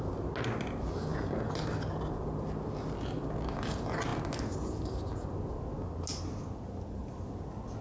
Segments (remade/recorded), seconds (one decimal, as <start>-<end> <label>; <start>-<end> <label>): 0.0-7.8 recorded